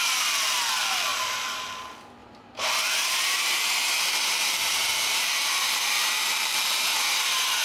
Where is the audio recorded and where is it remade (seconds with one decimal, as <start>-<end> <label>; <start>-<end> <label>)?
0.0-1.1 recorded; 1.1-1.7 remade; 1.7-2.2 recorded; 2.2-6.8 remade; 6.8-7.6 recorded